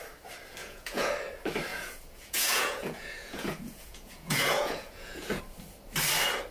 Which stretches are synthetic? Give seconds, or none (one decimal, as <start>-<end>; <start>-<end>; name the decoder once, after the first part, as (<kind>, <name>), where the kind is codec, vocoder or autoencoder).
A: 0.6-1.1 (vocoder, Vocos); 1.7-5.4